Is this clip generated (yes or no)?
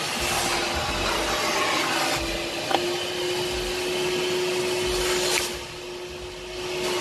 no